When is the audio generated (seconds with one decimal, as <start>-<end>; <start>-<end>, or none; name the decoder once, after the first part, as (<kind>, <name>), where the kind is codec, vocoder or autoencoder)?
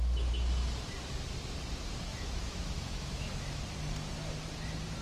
2.1-3.6 (autoencoder, DAC-VAE)